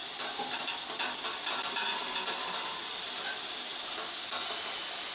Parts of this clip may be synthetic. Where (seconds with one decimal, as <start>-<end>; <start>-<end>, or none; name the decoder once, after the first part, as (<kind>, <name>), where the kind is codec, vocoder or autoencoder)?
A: none